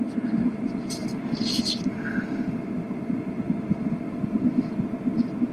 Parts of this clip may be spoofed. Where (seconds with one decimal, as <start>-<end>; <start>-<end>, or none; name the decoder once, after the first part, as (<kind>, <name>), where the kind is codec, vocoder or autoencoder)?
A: none